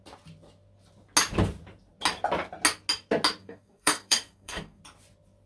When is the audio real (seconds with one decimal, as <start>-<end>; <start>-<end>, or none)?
0.0-3.4; 4.8-5.5